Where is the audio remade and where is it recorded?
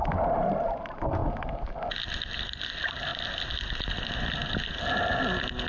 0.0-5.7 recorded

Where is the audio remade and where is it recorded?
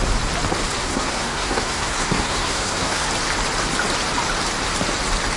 0.0-0.8 recorded; 0.8-3.1 remade; 3.1-5.4 recorded